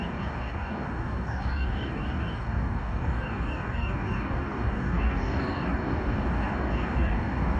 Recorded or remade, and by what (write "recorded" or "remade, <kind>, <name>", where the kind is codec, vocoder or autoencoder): remade, codec, DAC